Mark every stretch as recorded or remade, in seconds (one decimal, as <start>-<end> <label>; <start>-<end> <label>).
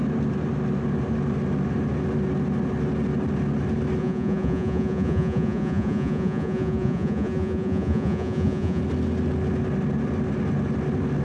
0.0-4.0 recorded; 4.0-8.8 remade; 8.8-11.2 recorded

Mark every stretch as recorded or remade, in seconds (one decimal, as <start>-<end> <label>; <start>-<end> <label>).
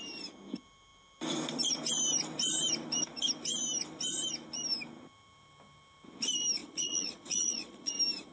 0.0-6.6 recorded; 6.6-7.9 remade; 7.9-8.3 recorded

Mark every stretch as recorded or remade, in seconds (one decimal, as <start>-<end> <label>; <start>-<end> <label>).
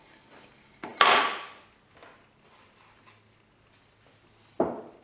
0.0-5.0 recorded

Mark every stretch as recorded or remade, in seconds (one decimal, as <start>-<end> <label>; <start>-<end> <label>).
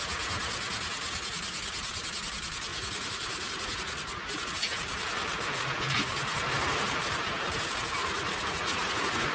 0.0-2.7 recorded; 2.7-4.5 remade; 4.5-8.0 recorded; 8.0-9.3 remade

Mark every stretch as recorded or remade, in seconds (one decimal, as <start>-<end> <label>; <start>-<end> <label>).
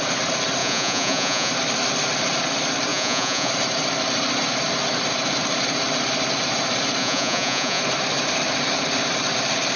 0.0-0.6 recorded; 0.6-1.5 remade; 1.5-2.9 recorded; 2.9-3.5 remade; 3.5-7.0 recorded; 7.0-7.8 remade; 7.8-9.8 recorded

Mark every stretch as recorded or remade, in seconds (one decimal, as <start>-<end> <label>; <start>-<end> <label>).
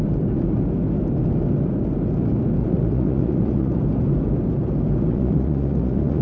0.0-2.6 recorded; 2.6-3.8 remade; 3.8-5.1 recorded; 5.1-6.2 remade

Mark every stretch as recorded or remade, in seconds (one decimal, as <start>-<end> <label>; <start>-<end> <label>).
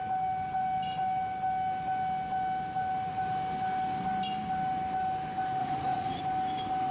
0.0-5.6 recorded; 5.6-6.2 remade; 6.2-6.9 recorded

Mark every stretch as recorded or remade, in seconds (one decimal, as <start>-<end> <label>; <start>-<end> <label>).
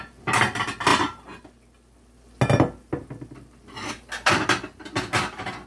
0.0-5.7 recorded